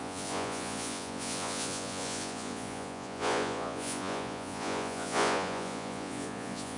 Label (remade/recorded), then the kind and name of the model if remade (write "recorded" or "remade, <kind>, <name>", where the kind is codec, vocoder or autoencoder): remade, vocoder, Vocos